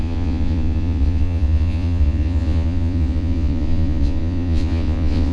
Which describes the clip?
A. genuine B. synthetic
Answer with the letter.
B